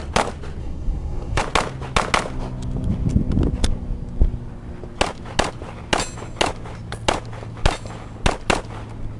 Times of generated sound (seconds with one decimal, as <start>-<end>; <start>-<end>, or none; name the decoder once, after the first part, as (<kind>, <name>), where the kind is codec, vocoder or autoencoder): 0.6-1.4 (codec, SNAC)